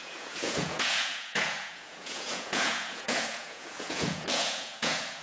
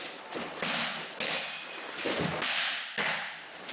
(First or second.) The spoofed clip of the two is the first